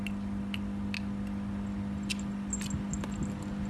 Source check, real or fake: real